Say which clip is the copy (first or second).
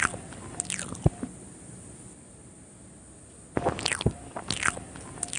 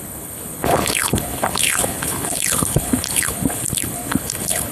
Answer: second